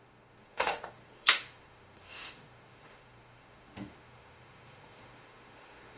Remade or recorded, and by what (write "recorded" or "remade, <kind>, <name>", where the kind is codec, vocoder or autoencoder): remade, autoencoder, DAC-VAE